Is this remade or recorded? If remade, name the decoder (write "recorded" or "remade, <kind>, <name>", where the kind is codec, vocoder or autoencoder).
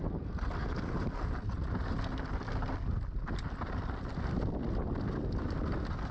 recorded